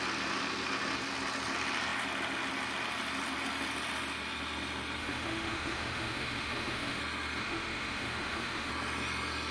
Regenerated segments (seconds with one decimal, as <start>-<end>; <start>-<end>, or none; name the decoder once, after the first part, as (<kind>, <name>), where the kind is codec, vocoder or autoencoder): 5.0-7.0 (autoencoder, DAC-VAE); 7.4-8.7